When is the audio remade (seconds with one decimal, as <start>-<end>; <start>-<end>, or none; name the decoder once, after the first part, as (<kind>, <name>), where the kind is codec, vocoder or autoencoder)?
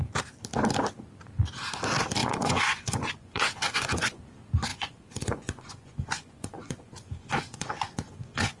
2.2-4.2 (vocoder, Vocos); 4.7-8.6